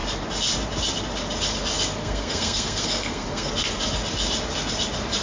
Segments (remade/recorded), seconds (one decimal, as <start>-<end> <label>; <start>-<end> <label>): 0.0-2.0 recorded; 2.0-3.5 remade; 3.5-5.2 recorded